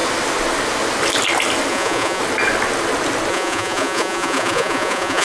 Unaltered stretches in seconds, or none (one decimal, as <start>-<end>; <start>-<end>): 0.0-1.7; 2.2-3.3